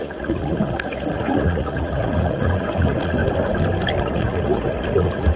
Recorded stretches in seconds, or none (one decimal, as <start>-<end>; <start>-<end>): 3.2-4.0